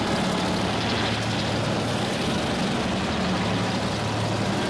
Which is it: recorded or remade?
recorded